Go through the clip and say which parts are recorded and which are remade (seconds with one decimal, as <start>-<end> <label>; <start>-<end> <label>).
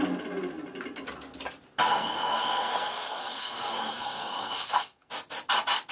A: 0.0-1.9 recorded; 1.9-5.1 remade; 5.1-5.9 recorded